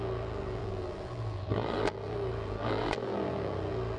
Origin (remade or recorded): remade